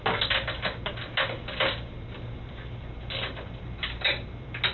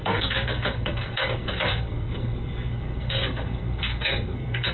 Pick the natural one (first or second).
first